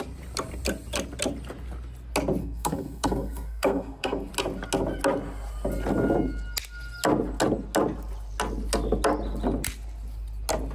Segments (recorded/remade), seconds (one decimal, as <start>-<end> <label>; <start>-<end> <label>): 0.0-2.4 recorded; 2.4-4.3 remade; 4.3-10.7 recorded